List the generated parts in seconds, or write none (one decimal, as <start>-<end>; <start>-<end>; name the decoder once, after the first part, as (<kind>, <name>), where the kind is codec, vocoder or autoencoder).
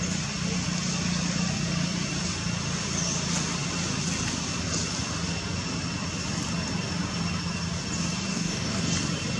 8.3-8.8 (codec, DAC)